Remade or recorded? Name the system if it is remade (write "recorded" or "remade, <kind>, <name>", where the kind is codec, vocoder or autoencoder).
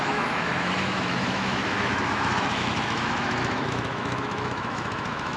remade, autoencoder, DAC-VAE